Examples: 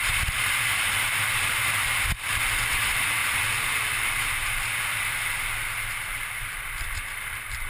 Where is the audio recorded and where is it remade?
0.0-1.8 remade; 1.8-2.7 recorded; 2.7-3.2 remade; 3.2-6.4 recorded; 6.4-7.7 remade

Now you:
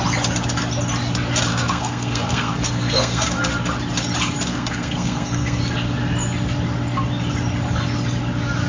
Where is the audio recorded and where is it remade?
0.0-1.5 recorded; 1.5-3.2 remade; 3.2-4.5 recorded; 4.5-5.6 remade; 5.6-8.7 recorded